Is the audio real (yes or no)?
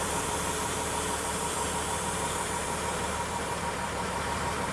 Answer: no